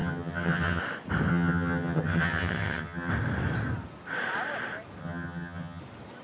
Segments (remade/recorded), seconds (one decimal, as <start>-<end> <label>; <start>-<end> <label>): 0.0-0.8 remade; 0.8-1.3 recorded; 1.3-3.1 remade; 3.1-5.0 recorded; 5.0-5.8 remade; 5.8-6.2 recorded